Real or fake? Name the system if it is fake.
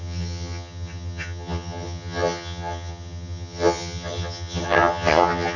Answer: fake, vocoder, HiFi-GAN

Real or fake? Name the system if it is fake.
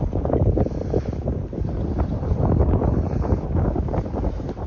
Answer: real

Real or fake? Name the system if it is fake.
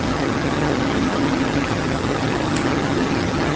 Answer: fake, vocoder, HiFi-GAN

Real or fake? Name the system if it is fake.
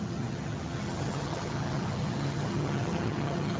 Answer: fake, vocoder, HiFi-GAN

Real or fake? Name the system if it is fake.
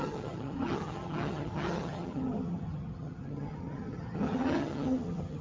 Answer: fake, vocoder, HiFi-GAN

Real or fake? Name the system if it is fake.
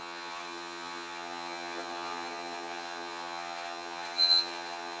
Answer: fake, vocoder, HiFi-GAN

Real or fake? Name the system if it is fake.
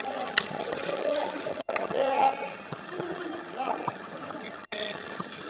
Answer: fake, vocoder, HiFi-GAN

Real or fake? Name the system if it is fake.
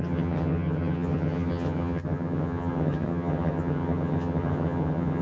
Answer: fake, vocoder, HiFi-GAN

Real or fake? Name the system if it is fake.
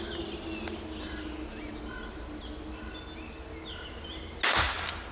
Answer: real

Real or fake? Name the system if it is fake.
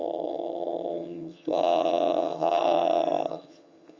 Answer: fake, vocoder, HiFi-GAN